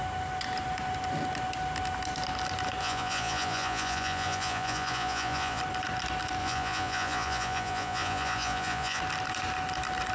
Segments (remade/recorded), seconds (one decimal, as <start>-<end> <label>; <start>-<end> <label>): 0.0-2.8 recorded; 2.8-5.6 remade; 5.6-6.4 recorded; 6.4-9.0 remade; 9.0-10.1 recorded